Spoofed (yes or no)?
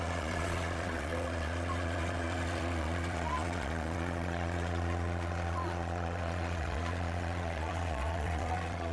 yes